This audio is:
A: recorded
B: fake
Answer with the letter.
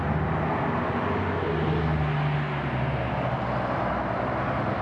A